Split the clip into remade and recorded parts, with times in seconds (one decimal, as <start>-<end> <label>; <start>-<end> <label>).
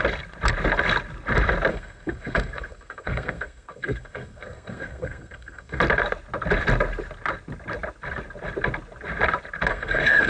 0.0-1.7 recorded; 1.7-5.8 remade; 5.8-9.7 recorded; 9.7-10.3 remade